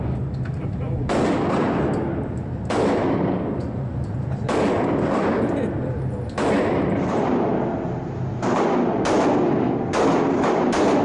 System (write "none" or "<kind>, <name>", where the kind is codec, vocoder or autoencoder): none